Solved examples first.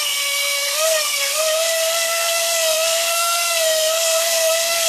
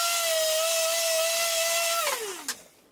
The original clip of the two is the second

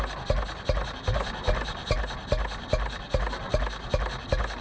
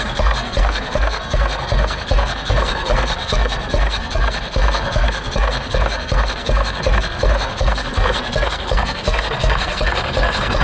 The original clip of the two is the first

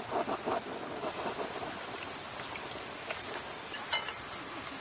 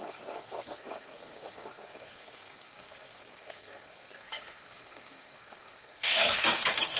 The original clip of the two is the first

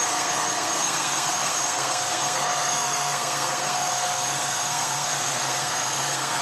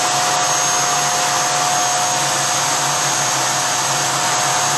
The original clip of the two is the second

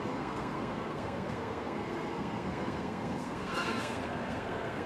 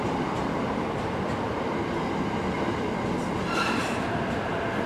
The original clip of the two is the second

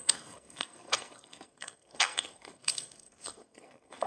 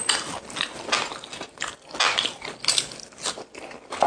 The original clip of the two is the second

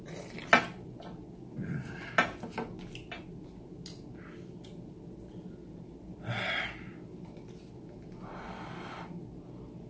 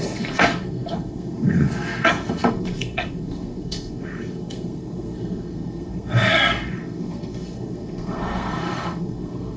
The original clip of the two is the first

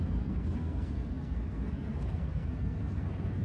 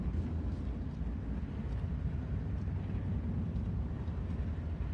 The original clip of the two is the second